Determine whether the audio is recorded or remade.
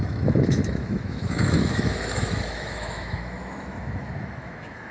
remade